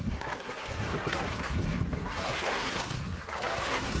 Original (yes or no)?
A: no